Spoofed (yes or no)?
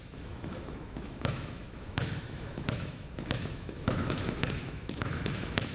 yes